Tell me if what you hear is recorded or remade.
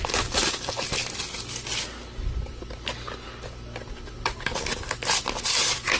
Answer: recorded